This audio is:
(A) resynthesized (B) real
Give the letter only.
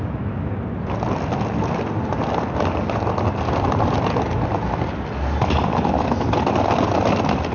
B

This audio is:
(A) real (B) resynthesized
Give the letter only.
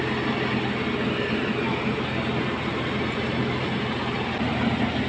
A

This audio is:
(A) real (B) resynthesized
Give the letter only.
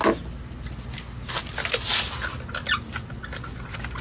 A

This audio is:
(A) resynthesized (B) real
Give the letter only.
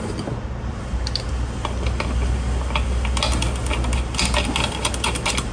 B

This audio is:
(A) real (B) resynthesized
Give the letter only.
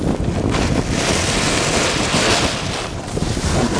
A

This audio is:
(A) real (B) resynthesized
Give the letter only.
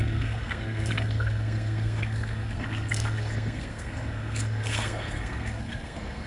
B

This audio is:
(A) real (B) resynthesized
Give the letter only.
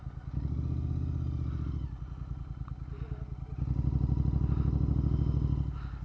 A